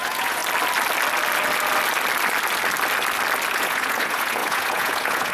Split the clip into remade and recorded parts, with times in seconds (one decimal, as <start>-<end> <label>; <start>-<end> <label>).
0.0-0.4 remade; 0.4-3.6 recorded; 3.6-5.3 remade